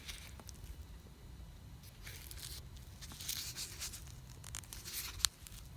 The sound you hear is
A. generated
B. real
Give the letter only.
B